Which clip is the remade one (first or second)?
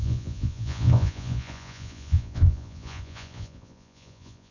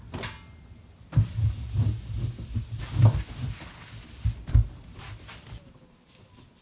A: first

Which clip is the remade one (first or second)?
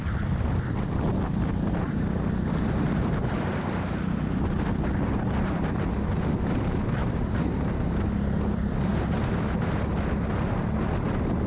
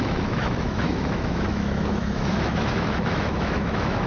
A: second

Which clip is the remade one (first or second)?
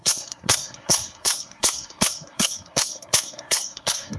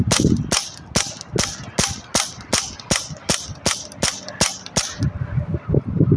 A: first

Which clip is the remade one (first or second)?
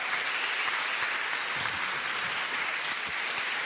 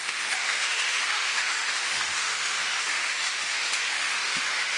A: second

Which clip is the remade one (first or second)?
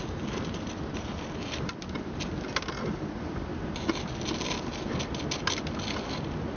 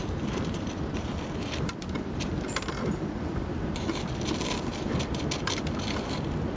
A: second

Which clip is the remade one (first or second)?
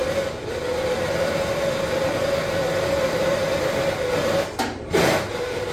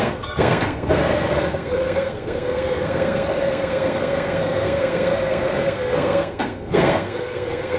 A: second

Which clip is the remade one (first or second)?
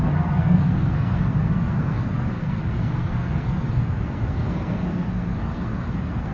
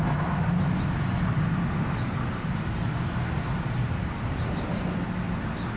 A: first